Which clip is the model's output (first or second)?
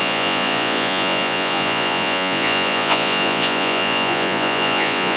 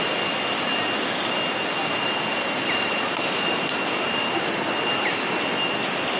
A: first